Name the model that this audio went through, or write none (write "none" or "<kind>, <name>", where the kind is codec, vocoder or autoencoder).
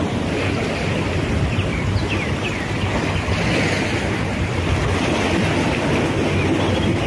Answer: none